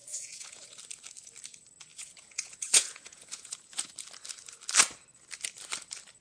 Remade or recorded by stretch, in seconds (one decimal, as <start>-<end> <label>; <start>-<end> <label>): 0.0-0.8 remade; 0.8-1.9 recorded; 1.9-3.9 remade; 3.9-6.2 recorded